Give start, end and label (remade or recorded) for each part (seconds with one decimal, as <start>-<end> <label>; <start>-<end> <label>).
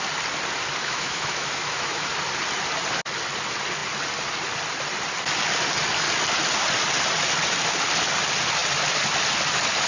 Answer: 0.0-0.8 recorded; 0.8-2.1 remade; 2.1-9.9 recorded